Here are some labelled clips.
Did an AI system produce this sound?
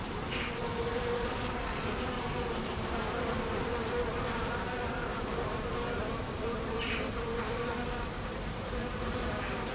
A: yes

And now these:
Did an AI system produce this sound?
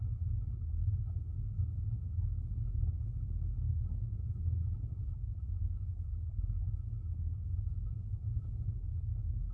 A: yes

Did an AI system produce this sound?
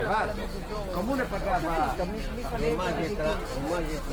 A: no